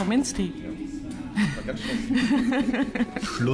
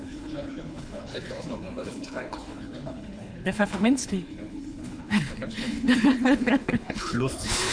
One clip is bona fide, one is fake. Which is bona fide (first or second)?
first